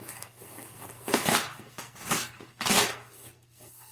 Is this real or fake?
fake